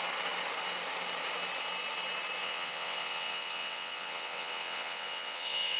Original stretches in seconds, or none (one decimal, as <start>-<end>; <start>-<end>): 0.0-2.4